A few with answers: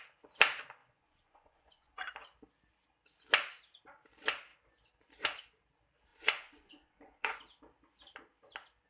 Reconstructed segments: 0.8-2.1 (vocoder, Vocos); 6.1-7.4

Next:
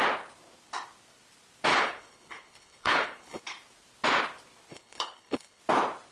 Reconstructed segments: 1.7-3.4 (codec, HILCodec); 4.7-5.6